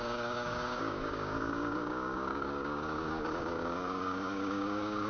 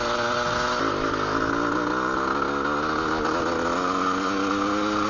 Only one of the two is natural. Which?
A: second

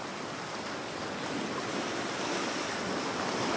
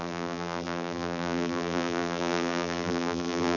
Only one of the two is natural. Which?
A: first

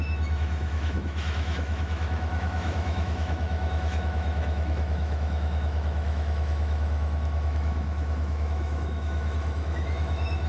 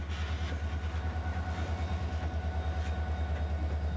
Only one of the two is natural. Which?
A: second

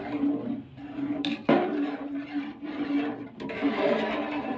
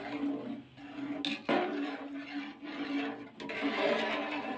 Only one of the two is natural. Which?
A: second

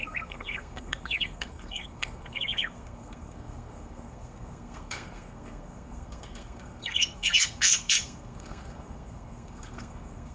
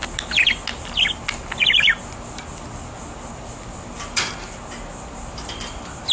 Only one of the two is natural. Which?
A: second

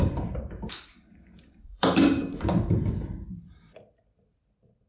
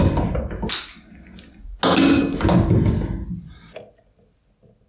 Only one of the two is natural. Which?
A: second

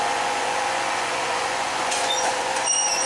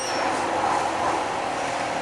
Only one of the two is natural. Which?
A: second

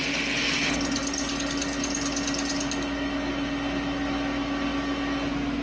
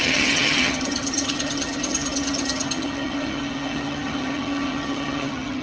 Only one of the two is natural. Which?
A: first